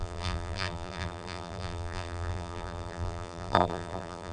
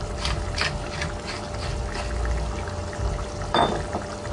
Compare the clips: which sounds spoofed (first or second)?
first